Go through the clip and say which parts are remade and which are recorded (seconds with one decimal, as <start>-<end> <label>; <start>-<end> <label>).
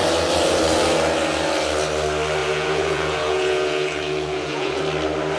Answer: 0.0-2.4 recorded; 2.4-4.8 remade; 4.8-5.4 recorded